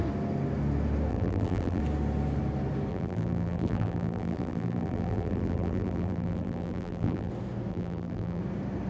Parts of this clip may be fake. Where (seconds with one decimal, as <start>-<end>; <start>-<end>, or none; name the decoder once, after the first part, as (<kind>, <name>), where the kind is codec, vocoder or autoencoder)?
1.1-1.8 (vocoder, BigVGAN v2); 2.9-7.3; 7.7-8.4